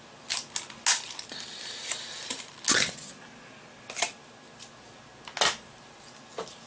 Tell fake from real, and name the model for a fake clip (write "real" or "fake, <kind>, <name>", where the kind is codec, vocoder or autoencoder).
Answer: real